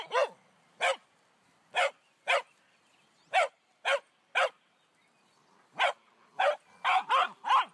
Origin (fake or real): real